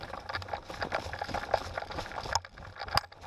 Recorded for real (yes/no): yes